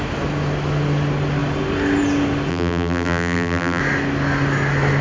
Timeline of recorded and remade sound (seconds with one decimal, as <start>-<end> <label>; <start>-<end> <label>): 0.0-2.5 recorded; 2.5-3.8 remade; 3.8-5.0 recorded